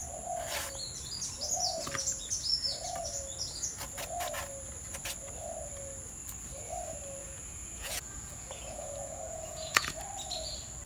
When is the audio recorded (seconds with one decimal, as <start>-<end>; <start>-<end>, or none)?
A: 0.0-7.2; 9.9-10.9